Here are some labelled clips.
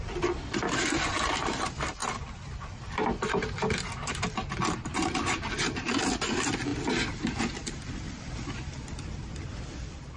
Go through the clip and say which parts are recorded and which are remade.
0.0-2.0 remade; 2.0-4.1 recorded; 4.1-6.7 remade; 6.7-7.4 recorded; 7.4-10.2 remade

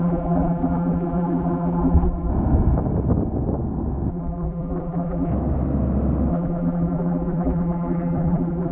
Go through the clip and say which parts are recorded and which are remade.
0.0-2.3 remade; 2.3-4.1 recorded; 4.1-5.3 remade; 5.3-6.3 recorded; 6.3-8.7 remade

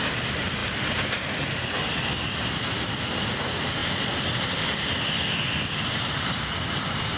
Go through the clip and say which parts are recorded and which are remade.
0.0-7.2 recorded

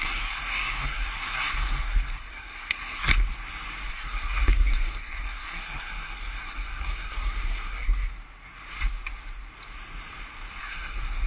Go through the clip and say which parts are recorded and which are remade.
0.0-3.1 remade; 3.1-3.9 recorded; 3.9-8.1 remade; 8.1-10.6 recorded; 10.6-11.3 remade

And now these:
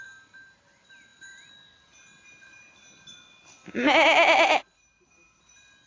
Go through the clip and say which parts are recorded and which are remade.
0.0-5.9 recorded

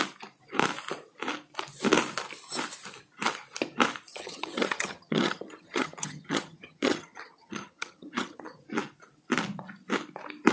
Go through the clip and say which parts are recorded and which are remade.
0.0-4.1 recorded; 4.1-8.6 remade; 8.6-10.5 recorded

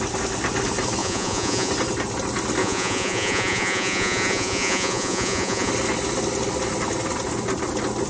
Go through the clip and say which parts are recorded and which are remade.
0.0-1.0 recorded; 1.0-1.7 remade; 1.7-2.6 recorded; 2.6-5.7 remade; 5.7-8.1 recorded

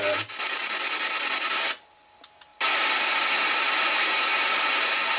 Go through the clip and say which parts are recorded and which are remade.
0.0-5.2 recorded